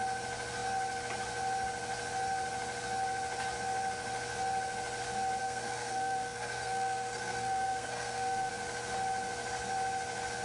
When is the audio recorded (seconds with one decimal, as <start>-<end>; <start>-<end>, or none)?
0.0-5.4; 8.5-10.4